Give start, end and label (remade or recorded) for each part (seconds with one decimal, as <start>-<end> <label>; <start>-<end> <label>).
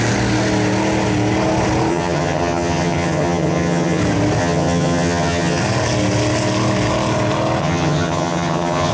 0.0-1.9 recorded; 1.9-4.0 remade; 4.0-4.4 recorded; 4.4-5.6 remade; 5.6-7.6 recorded; 7.6-8.9 remade